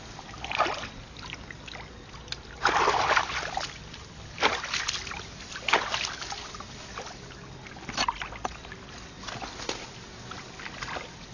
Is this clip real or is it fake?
real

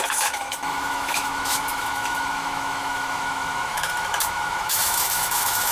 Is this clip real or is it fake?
fake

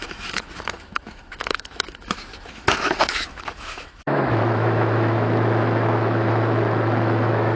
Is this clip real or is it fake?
fake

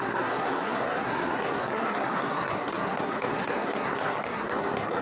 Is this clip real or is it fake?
fake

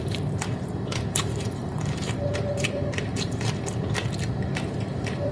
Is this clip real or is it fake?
fake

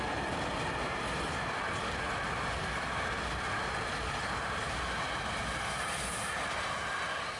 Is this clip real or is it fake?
real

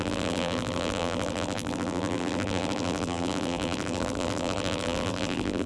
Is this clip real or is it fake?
fake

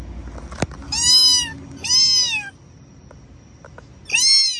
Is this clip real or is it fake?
real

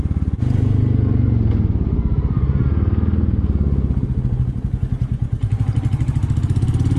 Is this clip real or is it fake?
real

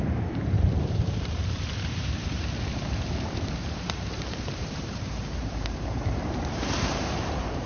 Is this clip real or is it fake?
fake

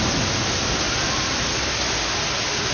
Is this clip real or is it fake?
real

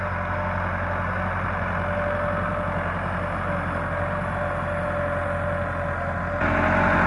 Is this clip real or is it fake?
real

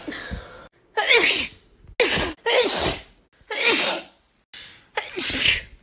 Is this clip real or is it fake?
real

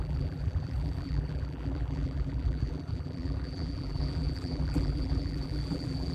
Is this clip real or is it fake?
fake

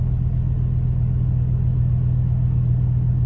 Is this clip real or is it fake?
real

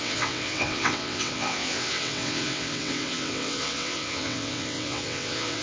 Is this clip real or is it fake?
fake